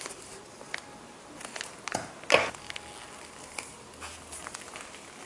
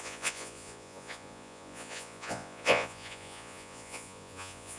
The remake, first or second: second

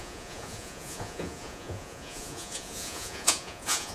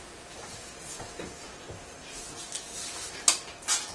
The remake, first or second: first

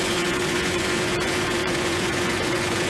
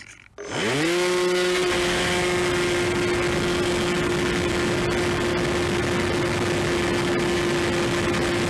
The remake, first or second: first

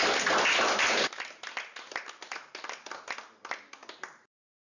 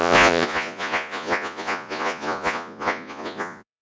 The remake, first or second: second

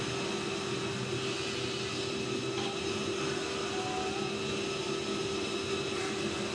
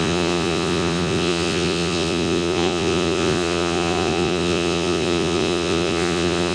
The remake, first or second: second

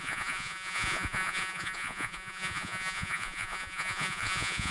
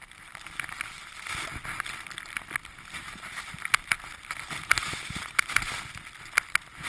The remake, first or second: first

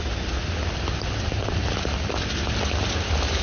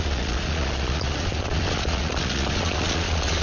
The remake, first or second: second